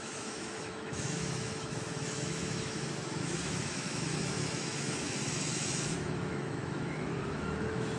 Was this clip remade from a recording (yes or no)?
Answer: yes